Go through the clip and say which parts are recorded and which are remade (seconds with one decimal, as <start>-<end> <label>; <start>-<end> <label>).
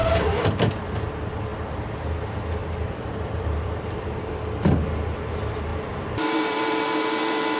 0.0-0.7 remade; 0.7-2.6 recorded; 2.6-4.3 remade; 4.3-5.7 recorded; 5.7-6.8 remade; 6.8-7.6 recorded